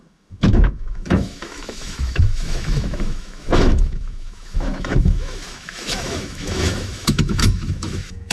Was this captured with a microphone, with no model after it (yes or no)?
no